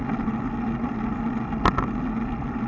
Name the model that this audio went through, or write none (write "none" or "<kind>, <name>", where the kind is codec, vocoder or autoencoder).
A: none